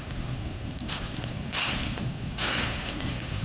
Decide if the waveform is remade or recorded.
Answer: remade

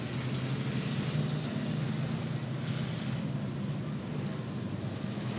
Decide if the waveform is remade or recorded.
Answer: recorded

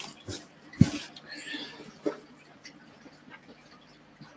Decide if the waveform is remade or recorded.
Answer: recorded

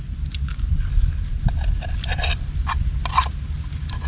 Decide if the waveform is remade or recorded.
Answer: recorded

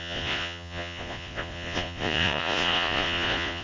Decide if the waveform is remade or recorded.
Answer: remade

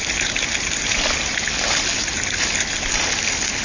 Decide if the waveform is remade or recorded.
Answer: recorded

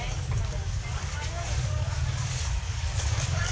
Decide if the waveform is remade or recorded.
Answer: remade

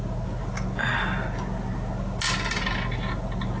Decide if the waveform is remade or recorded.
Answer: recorded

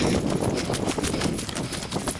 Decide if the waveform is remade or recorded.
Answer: recorded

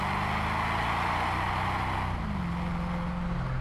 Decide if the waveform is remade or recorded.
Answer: recorded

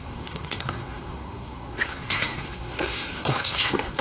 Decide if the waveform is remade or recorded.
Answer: remade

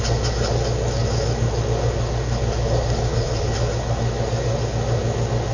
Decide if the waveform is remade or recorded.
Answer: recorded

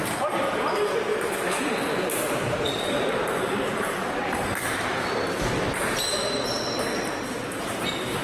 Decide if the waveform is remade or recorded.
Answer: remade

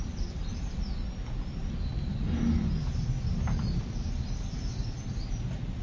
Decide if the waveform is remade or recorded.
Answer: recorded